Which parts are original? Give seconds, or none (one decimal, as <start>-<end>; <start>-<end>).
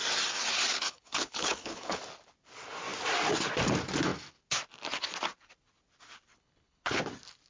0.0-0.7; 2.0-6.3; 7.0-7.5